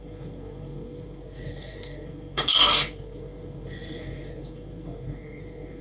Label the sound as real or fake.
fake